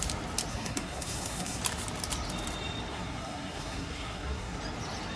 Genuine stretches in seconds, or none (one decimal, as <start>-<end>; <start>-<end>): 0.0-0.5; 1.6-2.9; 4.6-5.2